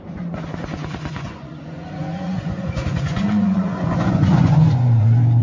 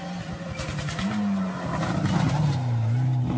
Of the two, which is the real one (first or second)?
second